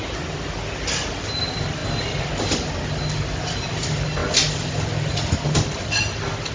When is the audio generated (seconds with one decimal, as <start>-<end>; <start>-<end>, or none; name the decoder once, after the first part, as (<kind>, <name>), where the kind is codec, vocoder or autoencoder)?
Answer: none

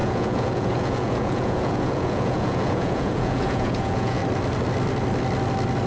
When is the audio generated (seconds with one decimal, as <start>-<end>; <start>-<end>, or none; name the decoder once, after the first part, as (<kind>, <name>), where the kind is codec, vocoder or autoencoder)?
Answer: 0.0-4.2 (vocoder, Vocos)

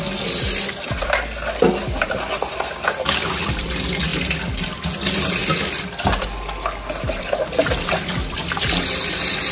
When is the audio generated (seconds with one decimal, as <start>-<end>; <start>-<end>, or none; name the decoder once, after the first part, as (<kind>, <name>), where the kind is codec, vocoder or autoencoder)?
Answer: none

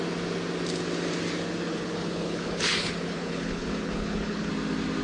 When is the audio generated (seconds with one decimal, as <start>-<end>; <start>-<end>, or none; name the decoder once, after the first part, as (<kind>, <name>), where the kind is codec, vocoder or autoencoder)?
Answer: 1.7-4.5 (codec, HILCodec)

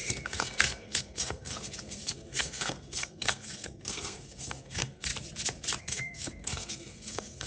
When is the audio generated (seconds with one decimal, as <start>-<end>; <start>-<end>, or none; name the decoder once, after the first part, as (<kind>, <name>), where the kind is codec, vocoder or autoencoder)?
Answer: 0.0-5.1 (codec, SNAC); 5.8-7.5